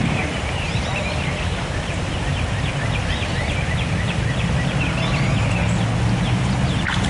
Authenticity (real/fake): real